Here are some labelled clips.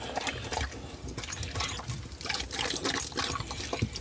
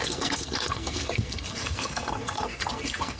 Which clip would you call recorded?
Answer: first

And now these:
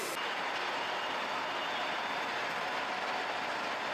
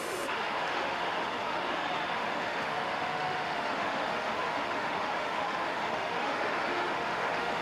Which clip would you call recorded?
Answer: first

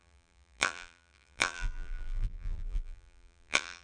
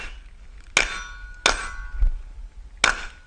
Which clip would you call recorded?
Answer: second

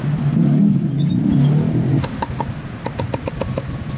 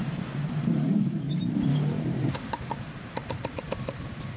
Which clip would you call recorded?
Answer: first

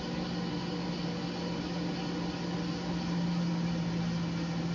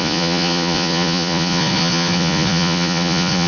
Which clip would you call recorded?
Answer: first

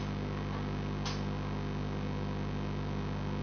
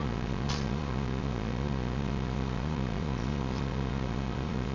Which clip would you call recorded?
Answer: first